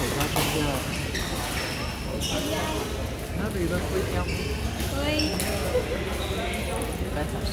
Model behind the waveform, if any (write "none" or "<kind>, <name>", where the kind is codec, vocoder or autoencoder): none